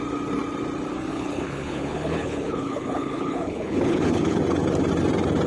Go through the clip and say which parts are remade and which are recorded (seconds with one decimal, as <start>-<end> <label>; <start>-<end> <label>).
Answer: 0.0-1.1 recorded; 1.1-4.4 remade; 4.4-5.5 recorded